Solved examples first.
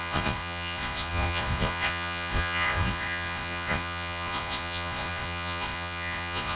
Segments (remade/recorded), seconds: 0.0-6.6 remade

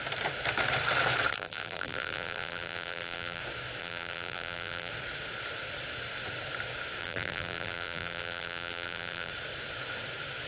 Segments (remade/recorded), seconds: 0.0-1.3 recorded; 1.3-3.4 remade; 3.4-3.8 recorded; 3.8-4.9 remade; 4.9-7.0 recorded; 7.0-9.3 remade; 9.3-10.5 recorded